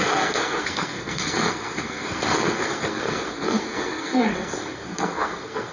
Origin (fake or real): fake